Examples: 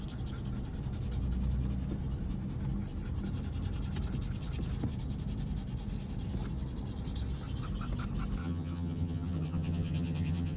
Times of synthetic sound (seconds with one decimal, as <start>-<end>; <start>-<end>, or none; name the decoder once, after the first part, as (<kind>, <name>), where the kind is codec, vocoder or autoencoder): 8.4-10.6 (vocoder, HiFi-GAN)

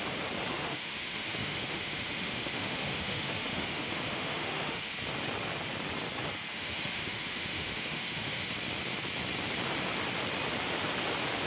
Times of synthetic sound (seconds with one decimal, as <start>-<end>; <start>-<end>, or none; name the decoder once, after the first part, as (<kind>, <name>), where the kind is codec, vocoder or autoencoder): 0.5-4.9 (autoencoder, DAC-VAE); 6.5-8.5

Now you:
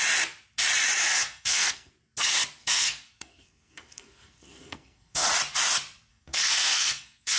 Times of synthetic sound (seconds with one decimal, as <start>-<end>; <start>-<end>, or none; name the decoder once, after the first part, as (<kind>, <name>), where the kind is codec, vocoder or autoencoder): 1.0-1.9 (codec, SNAC); 2.6-5.3; 6.1-7.4

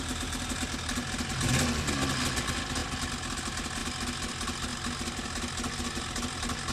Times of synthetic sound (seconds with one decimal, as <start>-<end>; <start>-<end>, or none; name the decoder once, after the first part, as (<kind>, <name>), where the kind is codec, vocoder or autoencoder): none

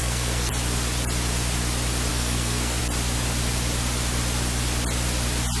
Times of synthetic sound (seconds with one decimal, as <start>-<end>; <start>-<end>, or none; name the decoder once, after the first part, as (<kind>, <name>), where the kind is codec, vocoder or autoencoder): 0.0-0.5 (codec, SNAC); 2.1-2.8

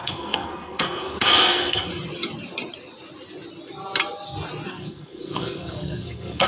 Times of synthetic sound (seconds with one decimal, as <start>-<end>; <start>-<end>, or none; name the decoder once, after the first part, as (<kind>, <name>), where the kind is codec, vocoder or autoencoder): 0.0-1.9 (codec, SNAC); 4.7-6.5

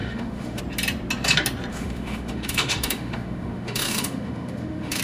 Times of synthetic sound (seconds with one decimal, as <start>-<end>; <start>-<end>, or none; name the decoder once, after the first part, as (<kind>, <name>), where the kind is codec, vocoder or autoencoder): 0.0-0.6 (autoencoder, DAC-VAE); 1.7-5.0